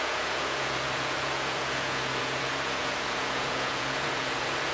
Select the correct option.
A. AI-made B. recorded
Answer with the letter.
A